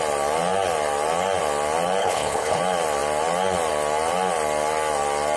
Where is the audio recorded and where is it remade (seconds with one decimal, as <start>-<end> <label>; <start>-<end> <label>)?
0.0-2.0 recorded; 2.0-2.6 remade; 2.6-5.4 recorded